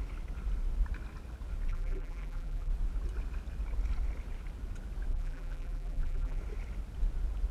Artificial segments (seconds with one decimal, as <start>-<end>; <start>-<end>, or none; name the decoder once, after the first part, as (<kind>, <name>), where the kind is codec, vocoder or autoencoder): 1.7-2.7 (vocoder, BigVGAN v2); 5.1-6.4